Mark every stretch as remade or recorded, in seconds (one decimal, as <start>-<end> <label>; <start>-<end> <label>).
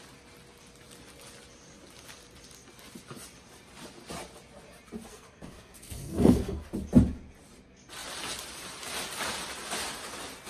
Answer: 0.0-5.1 recorded; 5.1-6.7 remade; 6.7-10.5 recorded